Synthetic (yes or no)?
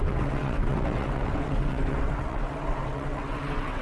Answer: yes